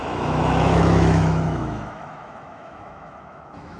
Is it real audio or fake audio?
fake